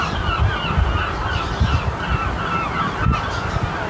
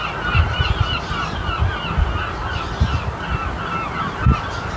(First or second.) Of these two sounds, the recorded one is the second